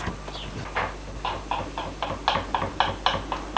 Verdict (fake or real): real